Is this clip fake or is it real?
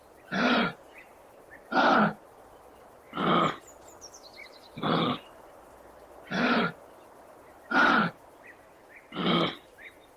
real